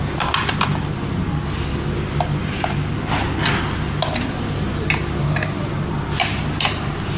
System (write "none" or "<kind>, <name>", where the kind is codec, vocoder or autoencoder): none